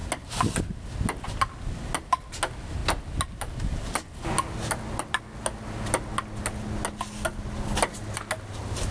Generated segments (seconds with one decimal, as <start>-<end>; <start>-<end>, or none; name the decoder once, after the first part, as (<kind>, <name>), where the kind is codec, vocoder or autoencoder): none